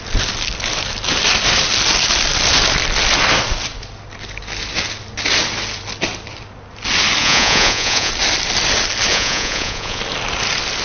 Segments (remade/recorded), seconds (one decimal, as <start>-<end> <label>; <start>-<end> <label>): 0.0-7.2 recorded; 7.2-8.1 remade; 8.1-9.1 recorded; 9.1-10.0 remade; 10.0-10.8 recorded